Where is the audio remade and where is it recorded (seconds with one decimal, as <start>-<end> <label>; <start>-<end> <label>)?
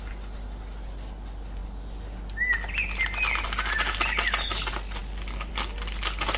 0.0-6.4 recorded